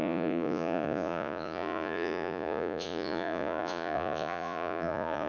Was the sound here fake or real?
fake